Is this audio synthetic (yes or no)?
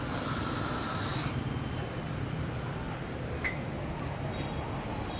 no